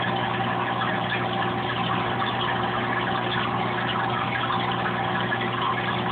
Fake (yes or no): no